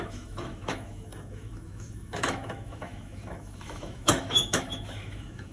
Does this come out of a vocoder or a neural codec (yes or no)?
yes